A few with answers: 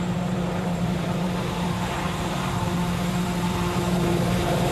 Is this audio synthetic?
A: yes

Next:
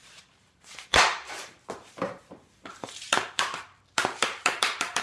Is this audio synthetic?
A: yes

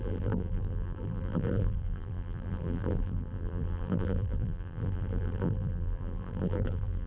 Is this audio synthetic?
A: yes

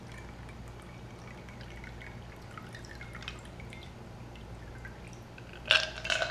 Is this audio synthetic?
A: no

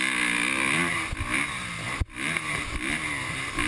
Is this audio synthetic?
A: no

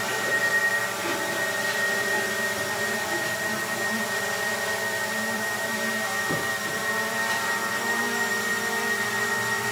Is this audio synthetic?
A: yes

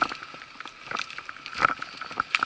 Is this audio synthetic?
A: no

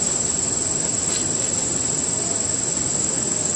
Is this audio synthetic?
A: no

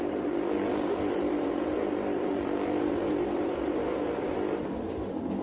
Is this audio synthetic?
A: no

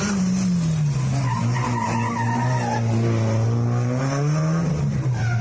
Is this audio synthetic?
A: no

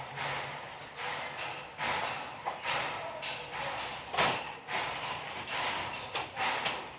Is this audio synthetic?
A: no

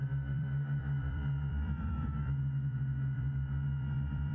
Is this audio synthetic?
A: yes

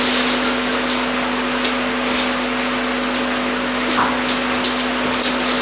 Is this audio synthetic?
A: no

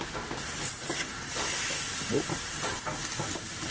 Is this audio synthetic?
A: no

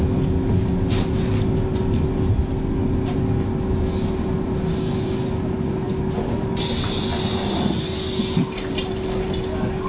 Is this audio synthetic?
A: no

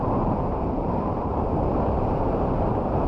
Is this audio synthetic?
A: yes